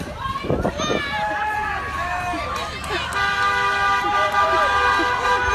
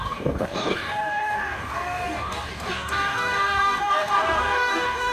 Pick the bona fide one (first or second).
first